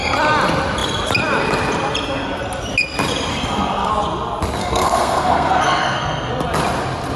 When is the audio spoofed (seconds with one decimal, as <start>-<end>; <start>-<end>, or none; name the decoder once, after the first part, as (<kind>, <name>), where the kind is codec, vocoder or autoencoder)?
3.3-3.9 (codec, SNAC); 4.6-6.3